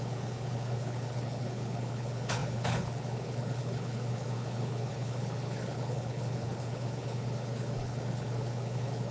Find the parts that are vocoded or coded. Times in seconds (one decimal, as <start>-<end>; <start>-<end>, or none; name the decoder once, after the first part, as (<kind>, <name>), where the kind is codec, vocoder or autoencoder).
0.0-9.1 (codec, HILCodec)